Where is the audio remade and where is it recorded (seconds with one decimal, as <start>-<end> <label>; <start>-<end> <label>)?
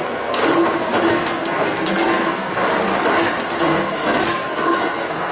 0.0-0.4 remade; 0.4-1.1 recorded; 1.1-2.6 remade; 2.6-3.6 recorded; 3.6-5.3 remade